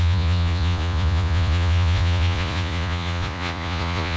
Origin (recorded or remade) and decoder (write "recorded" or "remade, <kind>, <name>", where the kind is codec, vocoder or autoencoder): remade, vocoder, Vocos